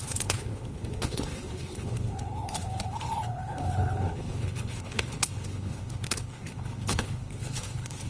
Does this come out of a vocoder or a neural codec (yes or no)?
yes